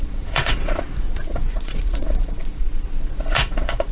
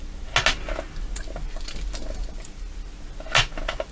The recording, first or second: second